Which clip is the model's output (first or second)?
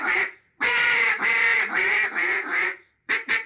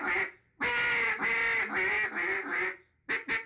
first